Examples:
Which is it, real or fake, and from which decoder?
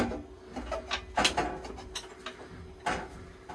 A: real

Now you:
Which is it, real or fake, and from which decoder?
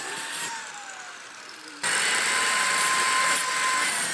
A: fake, vocoder, BigVGAN v2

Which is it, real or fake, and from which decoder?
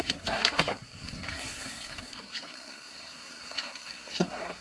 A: fake, codec, SNAC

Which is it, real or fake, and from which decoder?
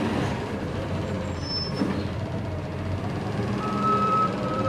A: fake, vocoder, BigVGAN v2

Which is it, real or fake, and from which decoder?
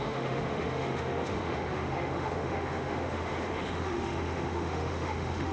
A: fake, autoencoder, DAC-VAE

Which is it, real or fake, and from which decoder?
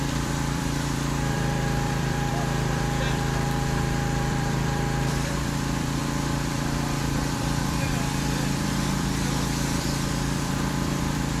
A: fake, vocoder, BigVGAN v2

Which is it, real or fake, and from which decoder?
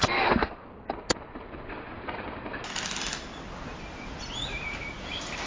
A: real